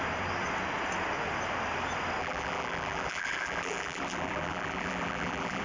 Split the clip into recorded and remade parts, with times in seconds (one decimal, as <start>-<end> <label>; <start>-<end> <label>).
0.0-2.2 recorded; 2.2-5.6 remade